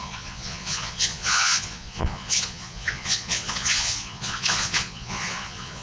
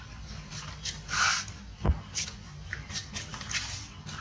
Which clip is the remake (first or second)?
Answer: first